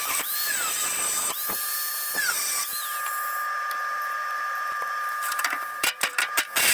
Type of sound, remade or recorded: remade